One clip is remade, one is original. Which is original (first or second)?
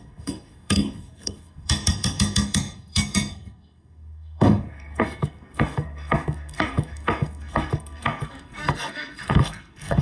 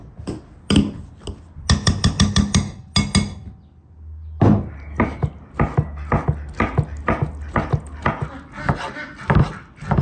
second